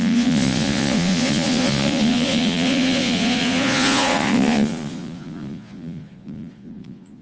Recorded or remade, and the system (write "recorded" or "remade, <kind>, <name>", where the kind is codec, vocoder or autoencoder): remade, vocoder, Vocos